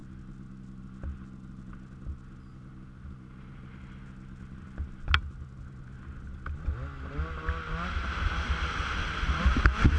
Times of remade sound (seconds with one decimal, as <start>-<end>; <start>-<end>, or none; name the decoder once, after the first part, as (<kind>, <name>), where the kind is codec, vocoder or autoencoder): none